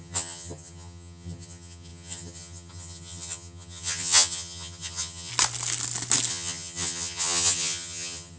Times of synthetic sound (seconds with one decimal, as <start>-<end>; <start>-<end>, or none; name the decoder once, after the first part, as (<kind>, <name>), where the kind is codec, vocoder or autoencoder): 0.0-5.3 (vocoder, HiFi-GAN); 6.3-8.4

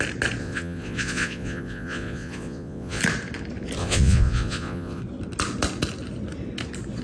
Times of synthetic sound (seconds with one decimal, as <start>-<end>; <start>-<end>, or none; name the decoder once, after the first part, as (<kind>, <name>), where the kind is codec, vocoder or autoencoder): 0.4-3.0 (vocoder, Vocos); 3.8-5.0

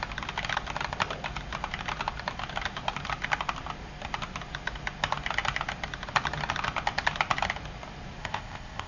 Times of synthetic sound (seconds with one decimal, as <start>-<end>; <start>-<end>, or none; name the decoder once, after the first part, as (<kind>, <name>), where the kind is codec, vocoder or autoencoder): 8.2-8.9 (codec, ZipCodec)

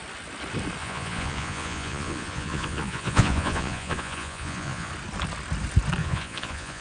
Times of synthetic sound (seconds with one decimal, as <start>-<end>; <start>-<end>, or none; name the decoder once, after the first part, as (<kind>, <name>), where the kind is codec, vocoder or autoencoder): 0.8-4.9 (vocoder, Vocos); 6.0-6.8

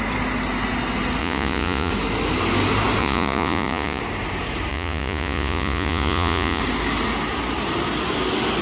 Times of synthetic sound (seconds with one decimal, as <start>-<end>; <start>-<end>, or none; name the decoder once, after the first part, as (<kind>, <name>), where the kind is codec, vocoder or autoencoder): 1.2-1.9 (vocoder, Vocos); 3.0-4.0; 4.7-6.6

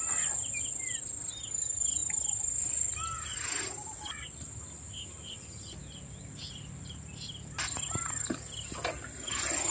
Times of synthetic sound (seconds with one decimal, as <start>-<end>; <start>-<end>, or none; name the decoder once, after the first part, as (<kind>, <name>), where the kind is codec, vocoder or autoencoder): none

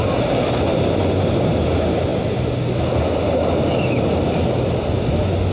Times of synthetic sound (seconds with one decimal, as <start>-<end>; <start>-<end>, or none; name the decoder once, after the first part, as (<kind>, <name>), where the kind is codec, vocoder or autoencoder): none